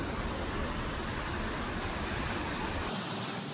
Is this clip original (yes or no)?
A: yes